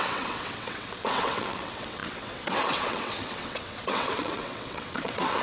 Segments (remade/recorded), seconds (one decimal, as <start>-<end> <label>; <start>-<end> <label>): 0.0-5.4 remade